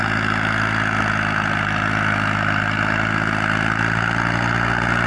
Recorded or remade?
recorded